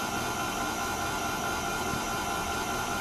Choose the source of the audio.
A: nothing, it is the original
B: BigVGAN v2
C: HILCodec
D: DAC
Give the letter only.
B